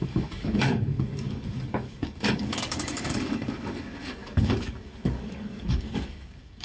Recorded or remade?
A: remade